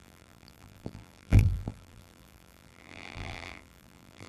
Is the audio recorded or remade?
remade